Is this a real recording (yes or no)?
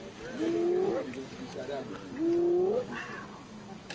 yes